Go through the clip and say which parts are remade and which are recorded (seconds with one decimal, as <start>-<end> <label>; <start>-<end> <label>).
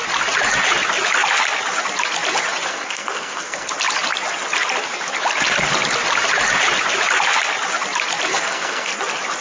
0.0-2.7 recorded; 2.7-3.7 remade; 3.7-8.3 recorded; 8.3-8.9 remade; 8.9-9.4 recorded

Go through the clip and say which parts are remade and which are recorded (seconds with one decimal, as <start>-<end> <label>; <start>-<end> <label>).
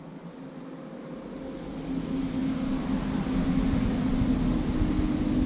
0.0-5.5 recorded